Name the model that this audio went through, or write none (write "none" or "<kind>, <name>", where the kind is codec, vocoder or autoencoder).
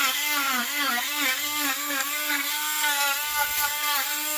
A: codec, SNAC